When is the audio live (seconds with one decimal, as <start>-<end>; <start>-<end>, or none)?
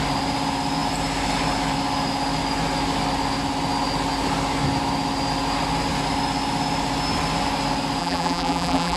0.0-8.0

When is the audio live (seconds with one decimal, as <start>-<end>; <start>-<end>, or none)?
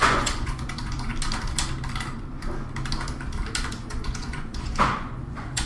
1.1-3.7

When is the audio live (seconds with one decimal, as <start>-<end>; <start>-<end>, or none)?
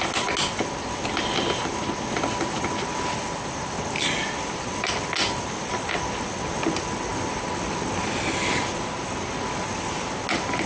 0.0-10.7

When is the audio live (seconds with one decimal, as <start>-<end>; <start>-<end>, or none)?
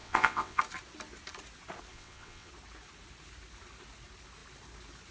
0.6-1.9; 2.5-5.1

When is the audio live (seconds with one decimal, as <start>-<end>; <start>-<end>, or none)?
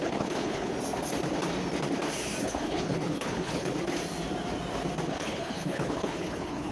0.7-2.4; 3.7-5.1